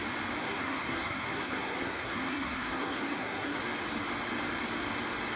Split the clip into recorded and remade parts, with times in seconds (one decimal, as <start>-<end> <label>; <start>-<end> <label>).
0.0-0.4 recorded; 0.4-3.6 remade; 3.6-5.4 recorded